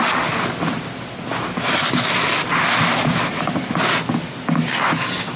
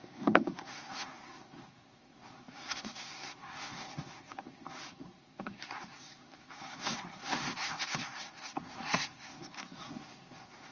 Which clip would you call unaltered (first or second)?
first